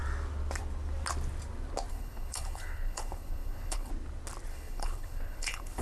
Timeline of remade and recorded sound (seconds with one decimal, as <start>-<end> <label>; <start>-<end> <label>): 0.0-1.9 recorded; 1.9-3.9 remade; 3.9-4.5 recorded; 4.5-5.8 remade